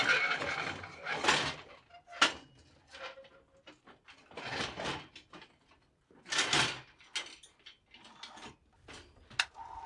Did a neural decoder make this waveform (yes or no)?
no